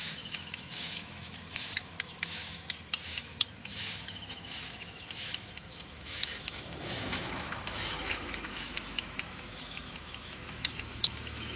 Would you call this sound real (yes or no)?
no